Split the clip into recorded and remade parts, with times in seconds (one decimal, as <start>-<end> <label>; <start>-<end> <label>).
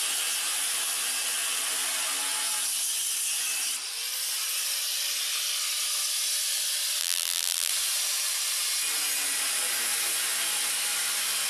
0.0-7.0 recorded; 7.0-7.7 remade; 7.7-11.5 recorded